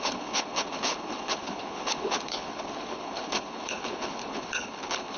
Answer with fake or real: fake